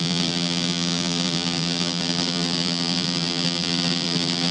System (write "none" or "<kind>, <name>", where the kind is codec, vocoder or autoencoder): vocoder, BigVGAN v2